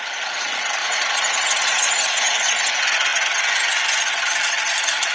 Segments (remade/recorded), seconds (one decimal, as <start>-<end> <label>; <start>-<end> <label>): 0.0-0.8 recorded; 0.8-2.5 remade; 2.5-5.1 recorded